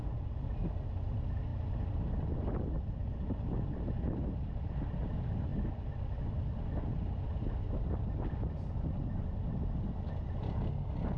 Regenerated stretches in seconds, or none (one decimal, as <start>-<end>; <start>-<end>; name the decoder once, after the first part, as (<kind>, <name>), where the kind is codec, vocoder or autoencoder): none